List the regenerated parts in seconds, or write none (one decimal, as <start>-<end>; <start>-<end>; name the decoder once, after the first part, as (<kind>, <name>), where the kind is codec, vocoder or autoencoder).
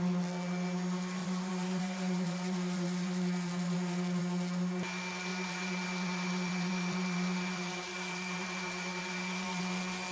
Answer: 1.2-4.2 (vocoder, BigVGAN v2); 5.3-9.6